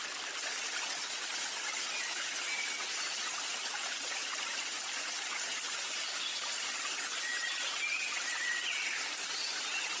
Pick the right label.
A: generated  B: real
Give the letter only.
B